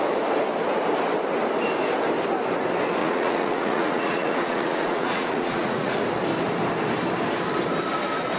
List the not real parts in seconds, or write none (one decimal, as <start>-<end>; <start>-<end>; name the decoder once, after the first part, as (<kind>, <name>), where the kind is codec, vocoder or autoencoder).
3.0-6.0 (vocoder, Vocos)